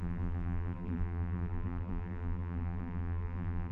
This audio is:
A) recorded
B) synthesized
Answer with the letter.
B